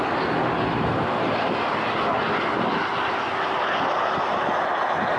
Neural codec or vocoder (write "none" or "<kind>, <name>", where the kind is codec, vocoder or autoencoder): none